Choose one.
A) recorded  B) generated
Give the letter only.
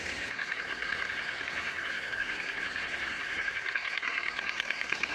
B